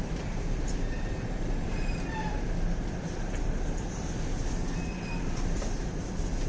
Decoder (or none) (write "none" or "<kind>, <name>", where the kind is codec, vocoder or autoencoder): vocoder, BigVGAN v2